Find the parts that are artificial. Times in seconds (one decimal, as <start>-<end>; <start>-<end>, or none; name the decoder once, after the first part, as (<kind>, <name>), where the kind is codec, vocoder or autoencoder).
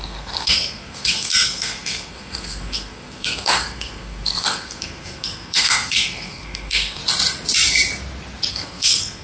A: 0.0-7.0 (codec, SNAC); 8.5-9.2